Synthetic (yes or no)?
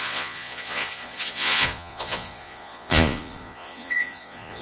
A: yes